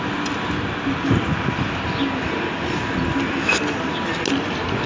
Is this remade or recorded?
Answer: recorded